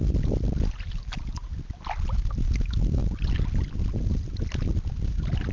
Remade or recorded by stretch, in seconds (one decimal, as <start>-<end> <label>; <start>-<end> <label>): 0.0-5.5 recorded